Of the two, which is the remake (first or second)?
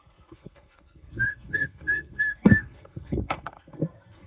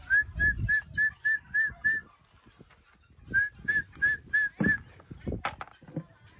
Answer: first